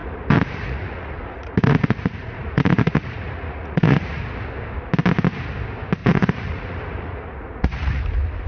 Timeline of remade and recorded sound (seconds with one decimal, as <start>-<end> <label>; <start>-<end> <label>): 0.0-4.2 remade; 4.2-6.0 recorded; 6.0-8.0 remade; 8.0-8.5 recorded